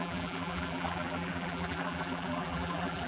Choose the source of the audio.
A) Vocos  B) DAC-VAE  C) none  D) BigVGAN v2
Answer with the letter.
D